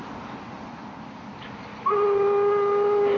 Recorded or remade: recorded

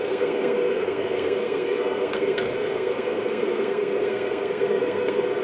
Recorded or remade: remade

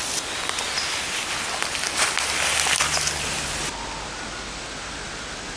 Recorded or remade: recorded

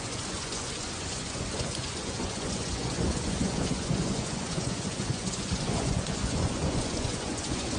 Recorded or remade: remade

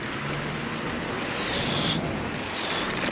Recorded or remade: recorded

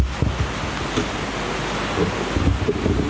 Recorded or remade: recorded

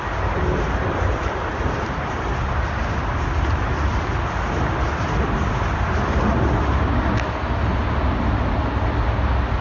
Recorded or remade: recorded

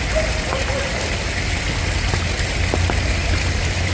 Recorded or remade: recorded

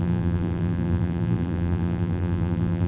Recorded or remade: remade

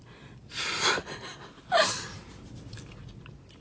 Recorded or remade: recorded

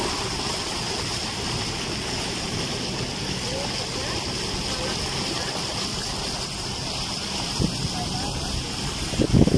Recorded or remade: recorded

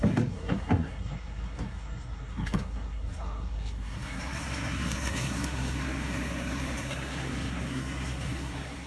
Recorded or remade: remade